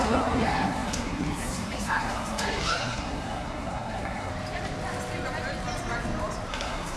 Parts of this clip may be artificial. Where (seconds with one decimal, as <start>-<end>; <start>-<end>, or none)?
0.0-4.3; 6.5-7.0